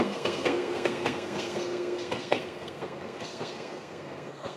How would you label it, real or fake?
fake